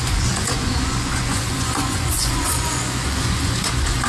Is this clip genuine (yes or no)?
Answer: no